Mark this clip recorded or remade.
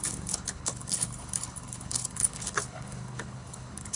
remade